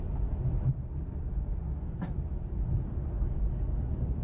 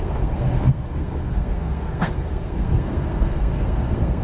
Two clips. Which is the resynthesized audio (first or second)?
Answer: second